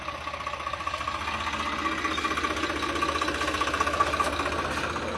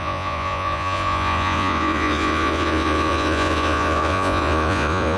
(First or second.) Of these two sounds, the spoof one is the second